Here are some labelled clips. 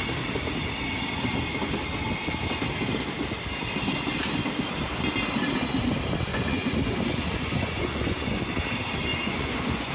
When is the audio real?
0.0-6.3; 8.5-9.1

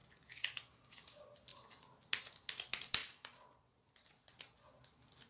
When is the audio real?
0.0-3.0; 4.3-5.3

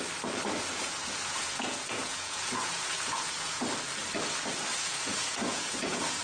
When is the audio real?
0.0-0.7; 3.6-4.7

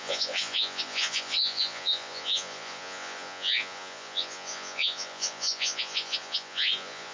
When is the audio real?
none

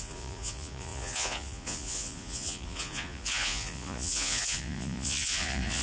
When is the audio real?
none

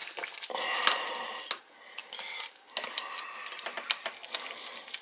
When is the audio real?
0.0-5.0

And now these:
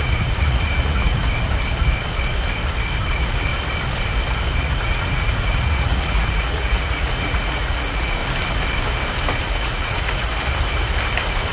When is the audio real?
1.2-3.1; 3.5-4.6; 8.2-9.4; 10.3-11.5

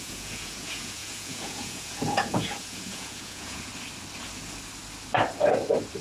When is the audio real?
3.7-6.0